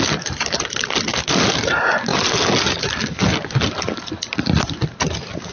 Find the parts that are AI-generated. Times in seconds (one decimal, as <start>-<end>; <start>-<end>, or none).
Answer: 0.0-1.1; 1.6-2.1; 4.1-5.5